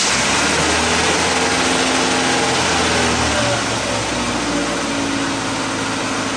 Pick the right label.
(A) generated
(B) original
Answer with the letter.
B